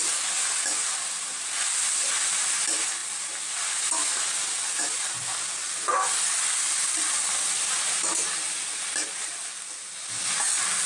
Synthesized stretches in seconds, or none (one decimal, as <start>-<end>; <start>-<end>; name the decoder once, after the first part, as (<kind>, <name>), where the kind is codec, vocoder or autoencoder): none